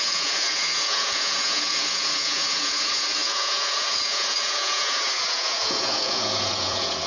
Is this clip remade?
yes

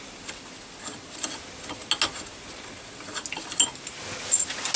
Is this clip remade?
no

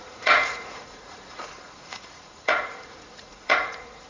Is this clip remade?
yes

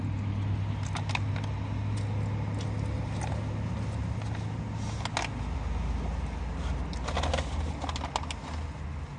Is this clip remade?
no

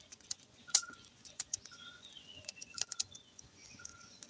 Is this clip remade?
yes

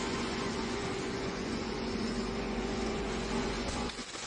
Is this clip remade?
yes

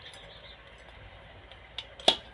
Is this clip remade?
no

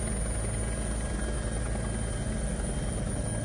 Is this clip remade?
no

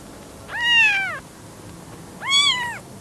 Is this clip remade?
no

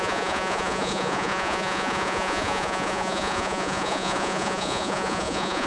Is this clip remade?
yes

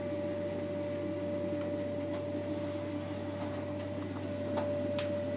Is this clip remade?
no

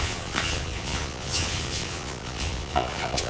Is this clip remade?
yes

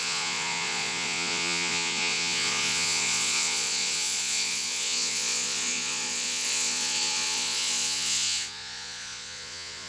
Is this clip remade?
yes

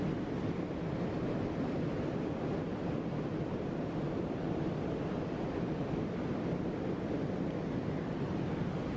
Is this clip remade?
no